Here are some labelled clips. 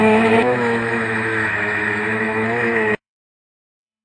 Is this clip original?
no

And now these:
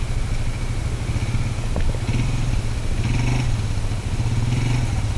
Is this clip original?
yes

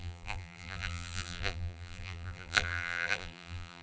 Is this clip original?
no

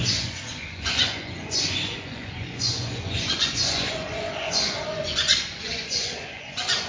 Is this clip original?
no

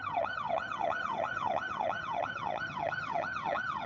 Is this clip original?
no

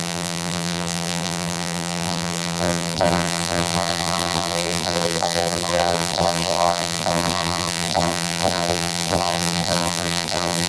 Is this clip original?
no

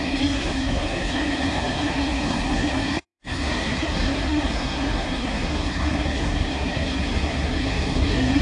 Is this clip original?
no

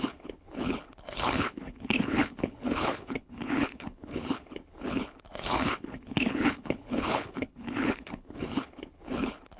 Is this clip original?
no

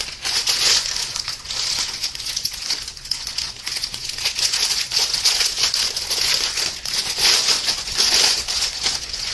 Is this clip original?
no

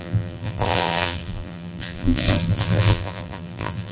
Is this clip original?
no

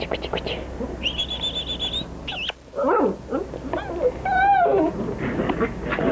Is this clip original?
yes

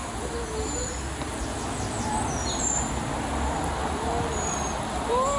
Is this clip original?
yes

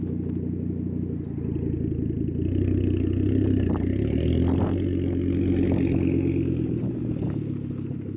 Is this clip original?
yes